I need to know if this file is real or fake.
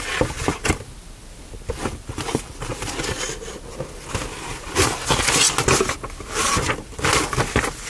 real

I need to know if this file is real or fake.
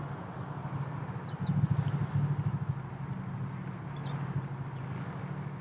real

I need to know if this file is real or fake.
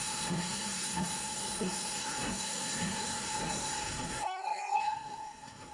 fake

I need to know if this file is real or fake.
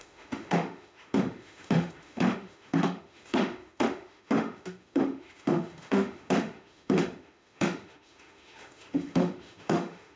fake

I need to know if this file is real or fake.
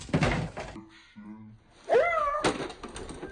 real